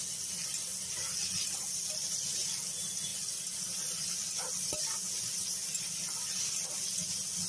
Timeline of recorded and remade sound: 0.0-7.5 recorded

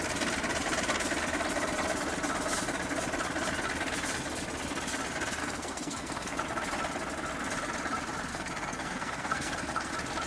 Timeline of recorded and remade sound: 0.0-5.4 recorded; 5.4-6.4 remade; 6.4-8.3 recorded; 8.3-9.9 remade; 9.9-10.3 recorded

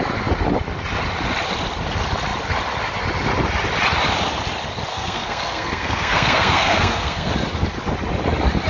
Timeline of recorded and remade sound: 0.0-4.9 recorded; 4.9-7.3 remade; 7.3-8.7 recorded

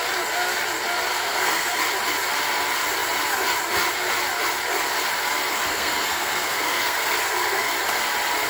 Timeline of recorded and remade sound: 0.0-1.1 recorded; 1.1-1.8 remade; 1.8-5.5 recorded; 5.5-7.7 remade; 7.7-8.5 recorded

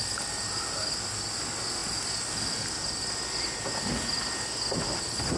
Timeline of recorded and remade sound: 0.0-5.4 recorded

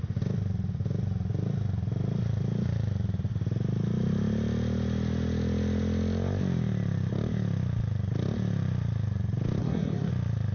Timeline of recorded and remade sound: 0.0-9.6 recorded; 9.6-10.1 remade; 10.1-10.5 recorded